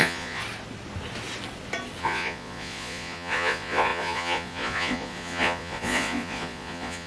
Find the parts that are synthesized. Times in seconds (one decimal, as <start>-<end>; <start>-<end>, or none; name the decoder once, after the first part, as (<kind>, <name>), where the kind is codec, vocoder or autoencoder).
0.0-0.4 (vocoder, Vocos); 2.0-7.1